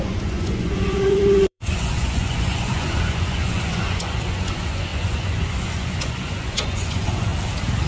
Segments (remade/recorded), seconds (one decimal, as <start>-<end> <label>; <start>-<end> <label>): 0.0-7.3 remade; 7.3-7.9 recorded